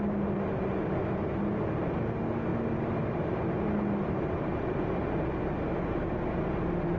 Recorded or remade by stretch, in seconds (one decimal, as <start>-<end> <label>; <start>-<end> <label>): 0.0-7.0 recorded